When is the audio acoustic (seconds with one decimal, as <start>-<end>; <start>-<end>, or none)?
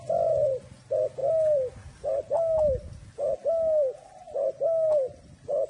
0.0-5.7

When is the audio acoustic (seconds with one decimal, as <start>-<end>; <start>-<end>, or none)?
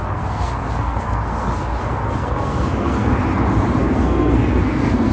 3.1-3.8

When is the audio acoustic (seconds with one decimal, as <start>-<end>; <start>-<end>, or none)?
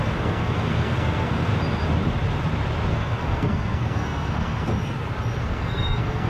1.5-2.9; 4.7-5.4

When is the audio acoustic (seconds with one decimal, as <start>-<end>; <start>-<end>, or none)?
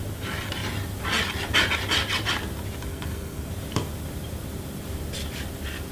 0.0-2.9; 3.5-5.9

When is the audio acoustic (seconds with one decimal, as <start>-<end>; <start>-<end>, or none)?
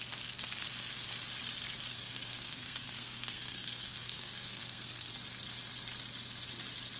0.0-1.9; 5.1-7.0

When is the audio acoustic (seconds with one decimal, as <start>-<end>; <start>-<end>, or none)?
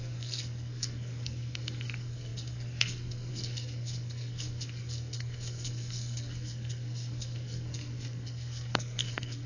none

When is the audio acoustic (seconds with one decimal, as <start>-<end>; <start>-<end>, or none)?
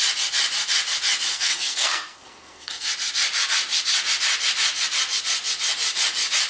0.0-1.3; 2.9-6.5